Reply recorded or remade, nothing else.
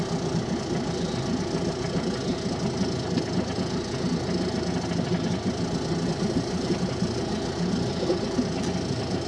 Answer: recorded